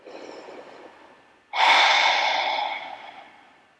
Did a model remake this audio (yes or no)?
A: no